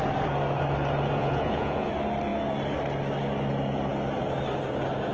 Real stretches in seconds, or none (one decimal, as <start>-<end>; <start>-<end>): 0.0-1.2; 1.9-5.1